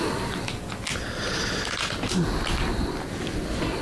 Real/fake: real